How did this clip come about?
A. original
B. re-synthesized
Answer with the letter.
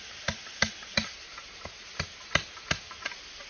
A